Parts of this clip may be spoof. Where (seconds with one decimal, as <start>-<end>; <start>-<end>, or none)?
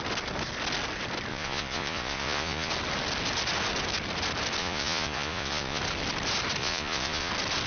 1.3-2.7; 4.6-5.8; 6.6-7.3